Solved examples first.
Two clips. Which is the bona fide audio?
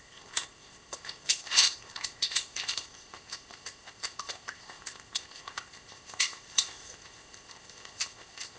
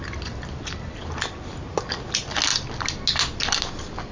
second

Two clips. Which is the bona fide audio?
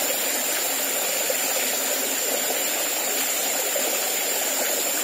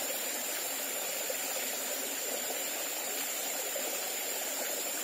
first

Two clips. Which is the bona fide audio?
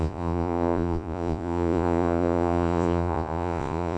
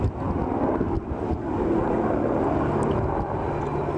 second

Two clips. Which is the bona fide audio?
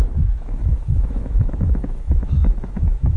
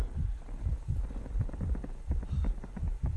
second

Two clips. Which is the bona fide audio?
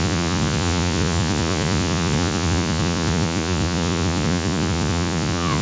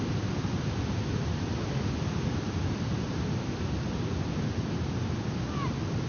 second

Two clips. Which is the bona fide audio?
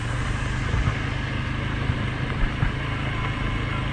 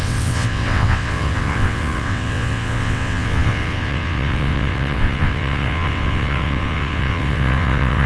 first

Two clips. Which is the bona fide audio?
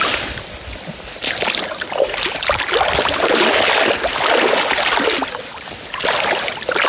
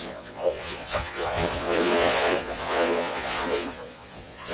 first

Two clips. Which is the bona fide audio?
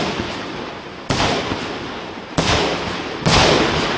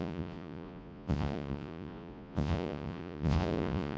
first